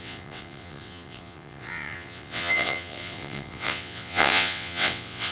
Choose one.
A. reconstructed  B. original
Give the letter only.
A